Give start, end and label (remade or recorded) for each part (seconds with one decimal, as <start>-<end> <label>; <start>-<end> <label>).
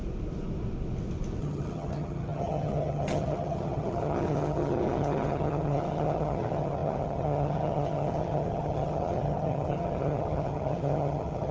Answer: 0.0-1.4 recorded; 1.4-11.5 remade